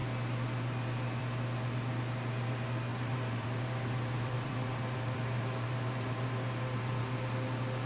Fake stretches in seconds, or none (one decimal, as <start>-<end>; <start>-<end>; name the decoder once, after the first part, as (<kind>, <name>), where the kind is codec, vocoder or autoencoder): 2.9-7.0 (vocoder, BigVGAN v2)